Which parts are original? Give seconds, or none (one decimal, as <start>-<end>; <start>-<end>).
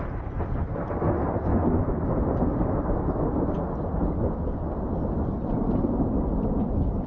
0.0-7.1